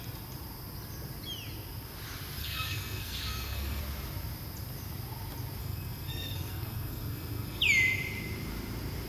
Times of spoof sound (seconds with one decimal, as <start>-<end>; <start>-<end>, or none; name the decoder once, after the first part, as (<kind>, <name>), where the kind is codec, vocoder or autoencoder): 2.4-3.8 (codec, SNAC); 5.6-7.6